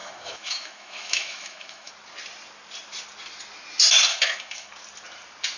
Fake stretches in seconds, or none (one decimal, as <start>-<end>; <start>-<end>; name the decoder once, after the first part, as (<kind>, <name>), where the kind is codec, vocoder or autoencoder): 0.0-1.9 (autoencoder, DAC-VAE); 4.1-4.7